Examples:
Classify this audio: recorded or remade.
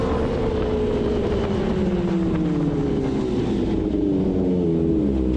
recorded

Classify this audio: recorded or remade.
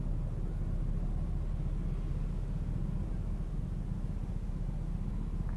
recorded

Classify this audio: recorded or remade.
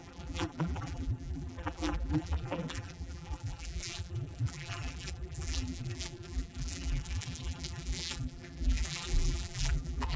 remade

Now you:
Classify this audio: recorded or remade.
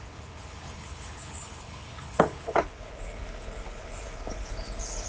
remade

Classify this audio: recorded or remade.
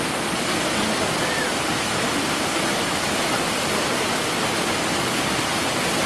recorded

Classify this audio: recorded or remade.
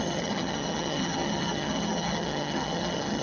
remade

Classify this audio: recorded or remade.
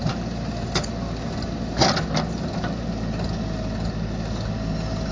recorded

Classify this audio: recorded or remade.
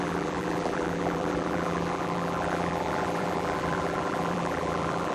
remade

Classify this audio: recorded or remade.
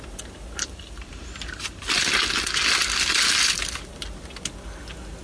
recorded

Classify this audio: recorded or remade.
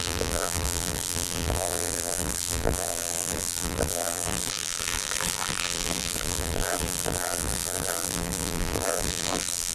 remade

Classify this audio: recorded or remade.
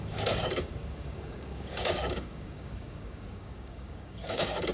remade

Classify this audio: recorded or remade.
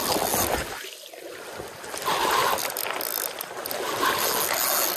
recorded